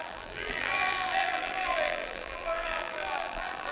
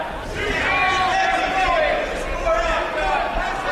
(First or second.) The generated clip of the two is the first